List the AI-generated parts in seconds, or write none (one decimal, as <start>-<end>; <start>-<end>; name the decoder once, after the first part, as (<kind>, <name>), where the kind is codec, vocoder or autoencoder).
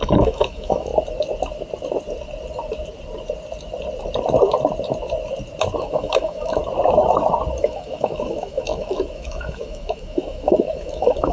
0.0-0.9 (autoencoder, DAC-VAE); 5.8-6.6; 7.6-11.3